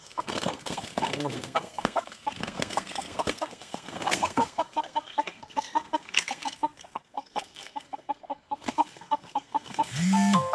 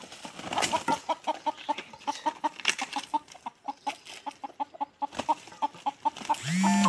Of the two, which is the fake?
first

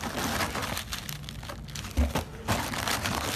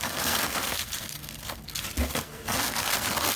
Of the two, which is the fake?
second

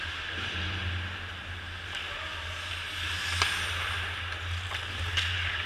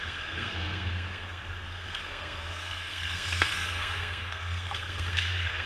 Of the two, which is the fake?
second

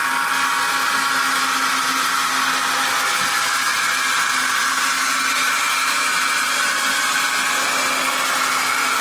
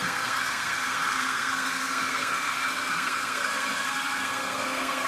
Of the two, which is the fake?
second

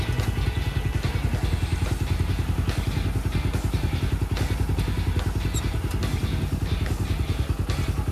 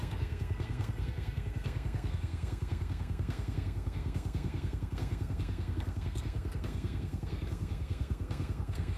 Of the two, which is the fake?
second